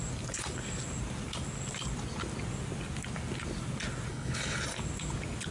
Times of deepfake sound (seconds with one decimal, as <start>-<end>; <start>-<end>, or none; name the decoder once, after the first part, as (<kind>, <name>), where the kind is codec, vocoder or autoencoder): 4.1-4.6 (codec, HILCodec)